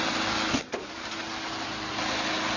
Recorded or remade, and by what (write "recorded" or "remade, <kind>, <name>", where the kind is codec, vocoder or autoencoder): recorded